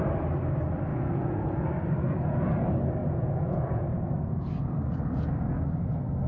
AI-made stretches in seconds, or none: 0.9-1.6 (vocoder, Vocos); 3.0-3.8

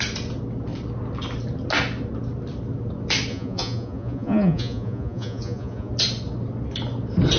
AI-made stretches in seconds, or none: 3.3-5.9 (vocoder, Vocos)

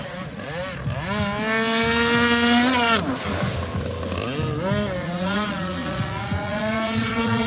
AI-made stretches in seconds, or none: 0.0-0.6 (vocoder, Vocos); 5.0-7.5

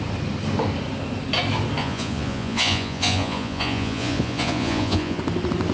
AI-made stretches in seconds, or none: 1.8-5.2 (vocoder, Vocos)

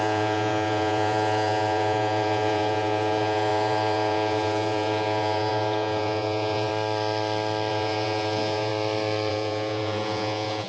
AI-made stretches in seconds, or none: 0.0-6.7 (vocoder, Vocos); 7.7-8.7; 9.3-10.7